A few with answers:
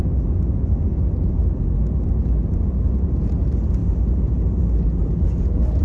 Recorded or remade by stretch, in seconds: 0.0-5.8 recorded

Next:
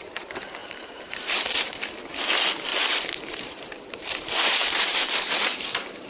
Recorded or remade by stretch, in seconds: 0.0-0.6 recorded; 0.6-1.7 remade; 1.7-2.7 recorded; 2.7-6.1 remade